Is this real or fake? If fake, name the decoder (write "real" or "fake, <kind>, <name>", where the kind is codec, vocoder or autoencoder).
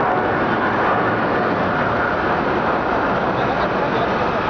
real